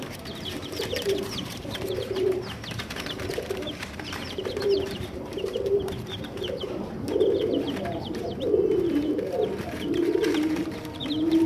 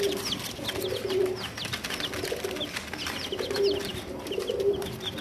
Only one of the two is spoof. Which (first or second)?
first